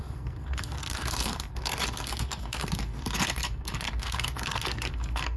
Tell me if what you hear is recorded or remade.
remade